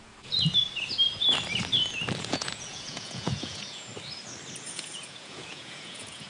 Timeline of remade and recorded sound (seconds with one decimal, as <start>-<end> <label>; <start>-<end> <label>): 0.0-0.6 remade; 0.6-2.2 recorded; 2.2-3.9 remade; 3.9-4.7 recorded; 4.7-6.3 remade